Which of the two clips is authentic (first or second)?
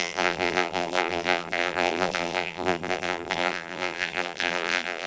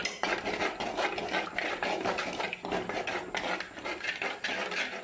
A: second